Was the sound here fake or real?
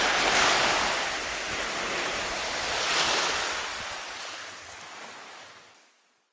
real